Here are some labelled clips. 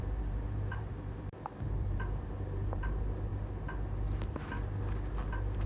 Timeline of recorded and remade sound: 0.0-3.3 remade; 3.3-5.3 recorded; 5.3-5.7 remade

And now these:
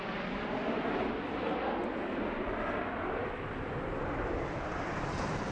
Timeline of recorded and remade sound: 0.0-5.5 recorded

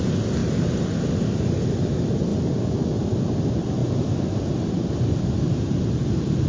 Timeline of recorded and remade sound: 0.0-0.4 recorded; 0.4-1.0 remade; 1.0-2.3 recorded; 2.3-2.8 remade; 2.8-3.8 recorded; 3.8-5.8 remade; 5.8-6.5 recorded